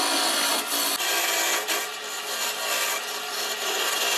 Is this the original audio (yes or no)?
yes